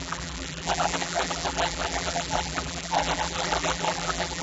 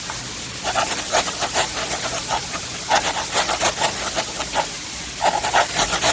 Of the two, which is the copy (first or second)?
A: first